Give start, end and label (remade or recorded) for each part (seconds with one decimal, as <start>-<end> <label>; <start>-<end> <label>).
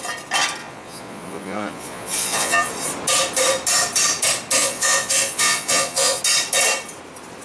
0.0-0.6 recorded; 0.6-2.7 remade; 2.7-4.6 recorded; 4.6-6.2 remade; 6.2-7.4 recorded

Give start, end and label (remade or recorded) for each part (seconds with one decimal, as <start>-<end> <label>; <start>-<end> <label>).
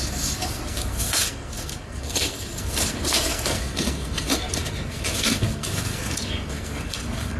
0.0-7.4 remade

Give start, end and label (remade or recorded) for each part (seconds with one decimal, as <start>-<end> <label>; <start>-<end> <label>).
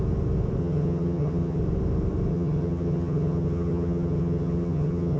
0.0-0.6 recorded; 0.6-1.6 remade; 1.6-2.3 recorded; 2.3-5.2 remade